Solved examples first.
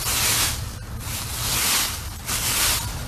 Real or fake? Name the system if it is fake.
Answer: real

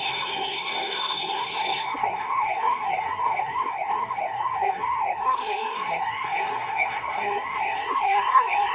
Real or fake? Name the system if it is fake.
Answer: fake, codec, SNAC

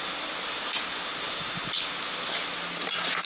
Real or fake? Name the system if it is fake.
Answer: real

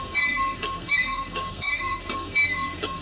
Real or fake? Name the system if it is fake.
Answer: fake, codec, SNAC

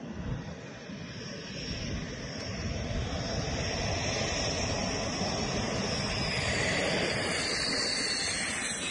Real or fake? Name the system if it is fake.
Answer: real